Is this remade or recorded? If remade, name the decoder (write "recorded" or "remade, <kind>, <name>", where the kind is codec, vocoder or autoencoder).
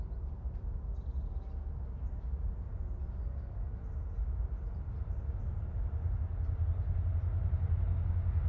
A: recorded